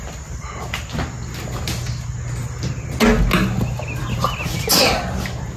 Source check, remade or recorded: recorded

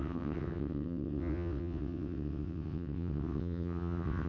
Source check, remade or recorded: remade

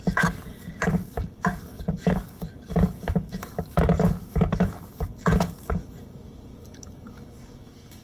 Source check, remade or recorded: remade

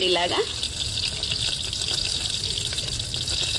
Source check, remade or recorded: recorded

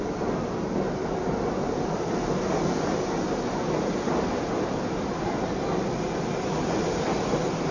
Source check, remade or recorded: recorded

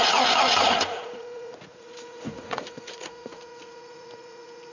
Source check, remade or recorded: remade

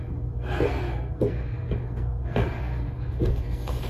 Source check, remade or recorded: remade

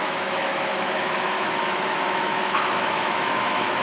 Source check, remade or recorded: remade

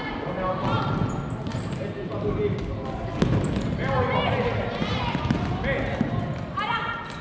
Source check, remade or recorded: recorded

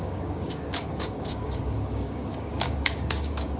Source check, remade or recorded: remade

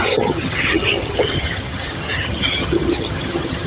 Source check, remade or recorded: remade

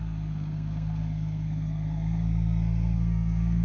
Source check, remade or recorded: remade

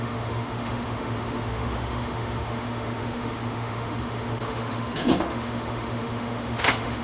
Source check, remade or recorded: remade